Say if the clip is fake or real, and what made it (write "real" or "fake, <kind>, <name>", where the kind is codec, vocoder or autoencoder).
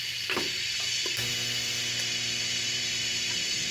real